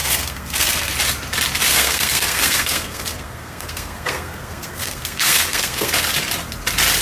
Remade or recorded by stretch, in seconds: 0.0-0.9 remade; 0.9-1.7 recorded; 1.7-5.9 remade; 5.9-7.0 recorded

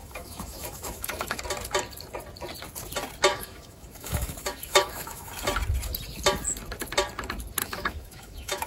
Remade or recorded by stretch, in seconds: 0.0-1.4 remade; 1.4-3.3 recorded; 3.3-5.3 remade; 5.3-7.6 recorded; 7.6-8.7 remade